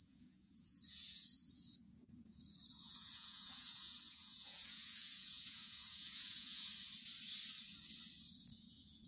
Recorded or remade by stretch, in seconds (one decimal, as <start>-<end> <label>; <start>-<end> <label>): 0.0-6.7 remade; 6.7-8.4 recorded; 8.4-9.1 remade